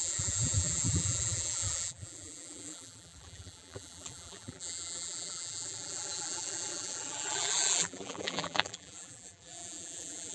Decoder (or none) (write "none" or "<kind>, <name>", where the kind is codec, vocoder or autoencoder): vocoder, BigVGAN v2